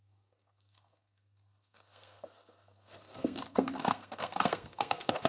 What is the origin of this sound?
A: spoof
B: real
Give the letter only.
A